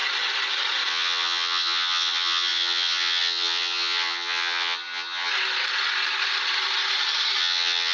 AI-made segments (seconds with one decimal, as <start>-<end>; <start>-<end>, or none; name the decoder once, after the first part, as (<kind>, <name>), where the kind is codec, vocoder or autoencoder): 0.9-5.3 (vocoder, HiFi-GAN); 7.4-7.9